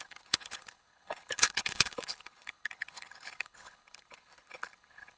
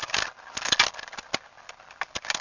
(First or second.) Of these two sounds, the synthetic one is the first